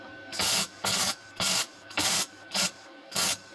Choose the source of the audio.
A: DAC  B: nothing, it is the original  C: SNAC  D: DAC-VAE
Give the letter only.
A